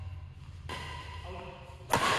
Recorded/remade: recorded